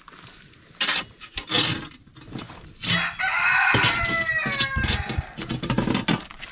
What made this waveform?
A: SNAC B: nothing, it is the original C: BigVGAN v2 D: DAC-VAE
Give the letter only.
B